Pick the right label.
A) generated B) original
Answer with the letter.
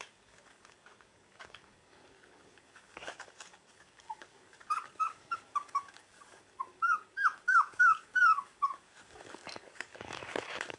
A